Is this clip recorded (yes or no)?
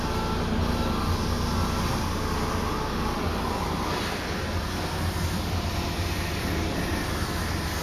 yes